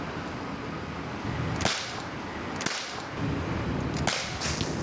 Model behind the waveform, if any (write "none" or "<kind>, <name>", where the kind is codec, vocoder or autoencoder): none